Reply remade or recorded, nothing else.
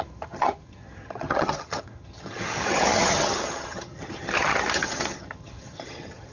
remade